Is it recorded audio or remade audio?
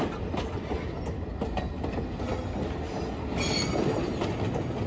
recorded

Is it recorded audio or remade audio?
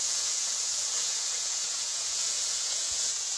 remade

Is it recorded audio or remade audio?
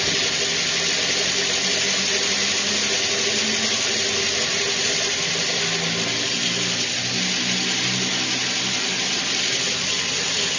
recorded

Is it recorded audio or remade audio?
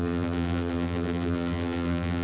remade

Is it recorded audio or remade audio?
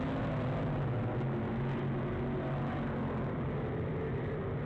recorded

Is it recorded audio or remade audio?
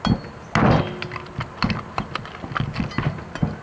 recorded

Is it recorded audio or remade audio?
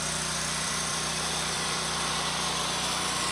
remade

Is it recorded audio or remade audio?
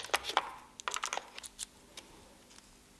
recorded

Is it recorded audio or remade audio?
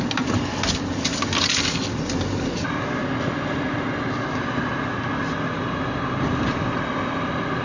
recorded